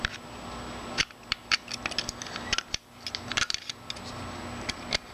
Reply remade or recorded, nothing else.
recorded